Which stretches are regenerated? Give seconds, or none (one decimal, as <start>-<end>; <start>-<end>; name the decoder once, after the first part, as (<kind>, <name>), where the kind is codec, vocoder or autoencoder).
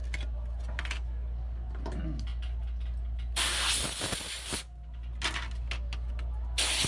none